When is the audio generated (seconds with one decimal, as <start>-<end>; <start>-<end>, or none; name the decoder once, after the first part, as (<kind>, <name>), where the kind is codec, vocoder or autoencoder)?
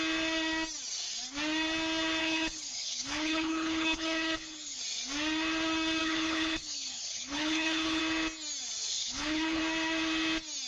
2.2-4.8 (codec, HILCodec); 6.0-8.0; 8.9-9.6